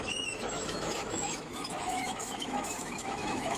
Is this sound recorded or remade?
remade